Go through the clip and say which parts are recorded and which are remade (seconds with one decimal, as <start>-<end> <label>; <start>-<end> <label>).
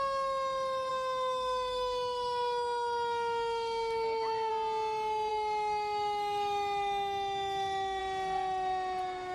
0.0-0.9 recorded; 0.9-4.5 remade; 4.5-5.3 recorded; 5.3-8.0 remade; 8.0-9.3 recorded